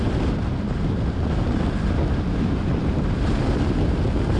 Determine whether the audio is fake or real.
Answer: real